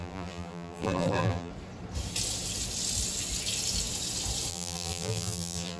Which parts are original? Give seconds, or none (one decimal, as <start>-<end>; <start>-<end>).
1.5-4.5